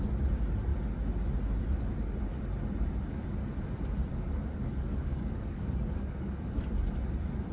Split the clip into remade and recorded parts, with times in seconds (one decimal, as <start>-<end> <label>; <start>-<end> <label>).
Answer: 0.0-4.1 recorded; 4.1-6.5 remade; 6.5-7.5 recorded